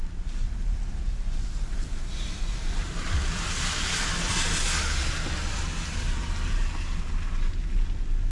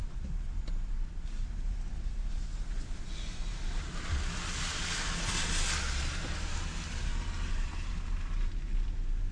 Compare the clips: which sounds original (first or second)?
second